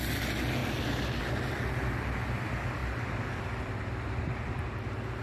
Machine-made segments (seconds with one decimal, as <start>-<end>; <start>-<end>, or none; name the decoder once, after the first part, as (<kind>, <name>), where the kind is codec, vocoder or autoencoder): 0.6-1.2 (vocoder, BigVGAN v2); 2.8-3.3

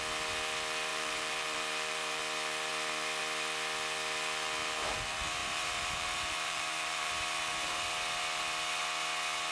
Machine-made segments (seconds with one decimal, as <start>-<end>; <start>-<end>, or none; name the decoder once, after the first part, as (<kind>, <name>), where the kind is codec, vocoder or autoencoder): 0.9-2.2 (vocoder, BigVGAN v2); 5.4-7.1

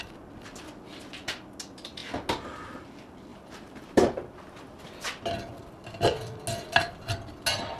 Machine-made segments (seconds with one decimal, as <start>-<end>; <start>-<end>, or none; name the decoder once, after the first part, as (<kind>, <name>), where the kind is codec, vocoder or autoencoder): 3.3-4.8 (vocoder, BigVGAN v2)

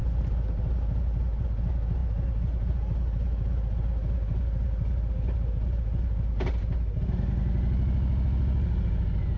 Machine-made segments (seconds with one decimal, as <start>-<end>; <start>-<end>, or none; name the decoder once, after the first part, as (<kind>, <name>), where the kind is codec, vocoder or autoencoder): none

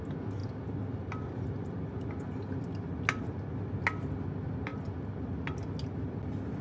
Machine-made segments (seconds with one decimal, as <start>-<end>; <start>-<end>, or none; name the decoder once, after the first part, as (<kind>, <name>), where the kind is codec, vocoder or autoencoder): 0.4-1.8 (vocoder, BigVGAN v2)

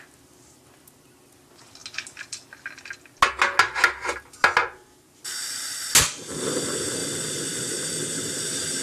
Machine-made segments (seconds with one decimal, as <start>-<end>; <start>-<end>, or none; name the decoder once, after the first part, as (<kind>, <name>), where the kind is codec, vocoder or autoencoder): 4.6-5.2 (vocoder, BigVGAN v2)